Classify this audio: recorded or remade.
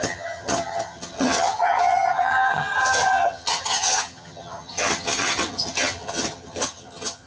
remade